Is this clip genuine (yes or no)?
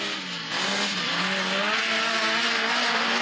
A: yes